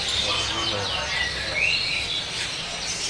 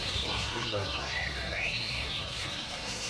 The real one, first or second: first